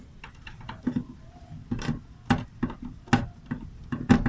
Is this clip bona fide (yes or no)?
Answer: yes